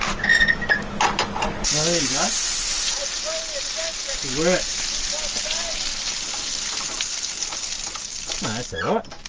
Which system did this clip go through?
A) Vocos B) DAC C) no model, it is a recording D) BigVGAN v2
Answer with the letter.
C